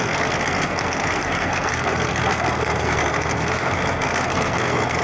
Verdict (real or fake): fake